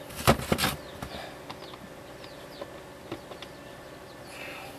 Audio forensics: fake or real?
real